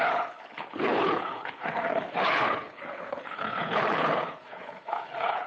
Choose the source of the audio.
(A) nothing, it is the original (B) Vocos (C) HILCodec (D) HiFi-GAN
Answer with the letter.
C